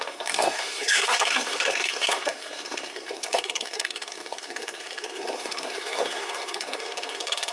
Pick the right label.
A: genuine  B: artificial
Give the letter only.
B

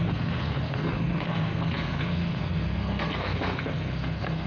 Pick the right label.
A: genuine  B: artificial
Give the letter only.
B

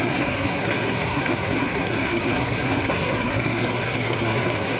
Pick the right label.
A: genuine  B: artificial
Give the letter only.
B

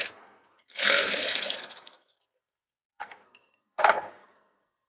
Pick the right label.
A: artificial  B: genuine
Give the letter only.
A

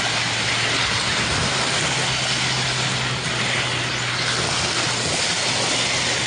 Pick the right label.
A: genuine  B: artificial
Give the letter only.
A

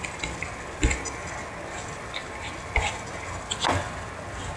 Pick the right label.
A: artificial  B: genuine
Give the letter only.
B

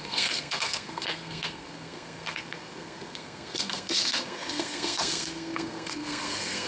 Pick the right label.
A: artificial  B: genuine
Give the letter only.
A